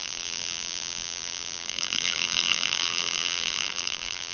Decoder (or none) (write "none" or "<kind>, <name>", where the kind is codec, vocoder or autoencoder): vocoder, BigVGAN v2